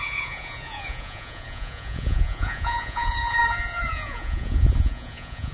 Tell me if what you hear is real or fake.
fake